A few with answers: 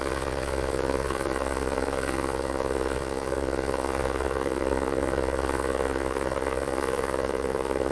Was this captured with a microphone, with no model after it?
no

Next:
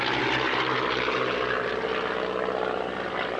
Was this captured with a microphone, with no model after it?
yes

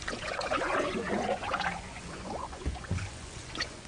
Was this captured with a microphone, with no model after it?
no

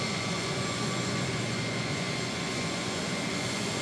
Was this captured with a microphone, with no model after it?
no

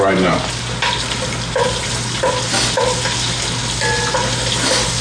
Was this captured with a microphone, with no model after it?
yes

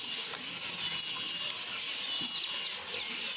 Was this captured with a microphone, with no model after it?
yes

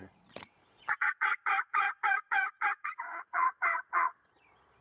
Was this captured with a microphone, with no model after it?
no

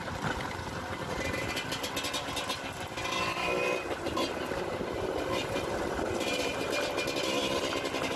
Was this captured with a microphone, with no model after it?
yes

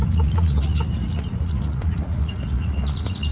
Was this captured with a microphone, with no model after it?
no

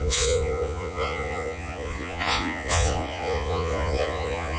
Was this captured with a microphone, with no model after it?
no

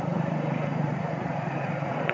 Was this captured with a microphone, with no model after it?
no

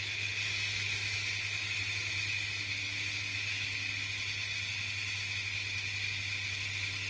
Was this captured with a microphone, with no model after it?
yes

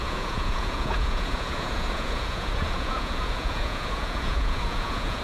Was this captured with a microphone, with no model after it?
no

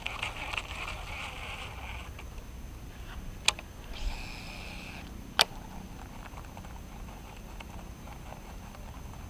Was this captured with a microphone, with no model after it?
yes